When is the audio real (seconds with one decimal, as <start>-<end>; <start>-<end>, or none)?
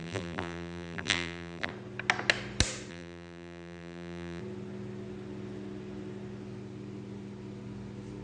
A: 1.7-2.9; 4.4-8.2